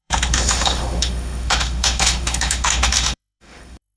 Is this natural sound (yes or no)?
no